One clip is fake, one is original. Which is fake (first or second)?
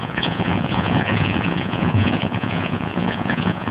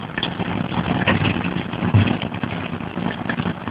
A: first